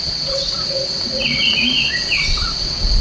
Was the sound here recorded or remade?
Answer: remade